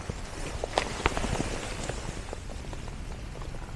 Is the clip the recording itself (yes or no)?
yes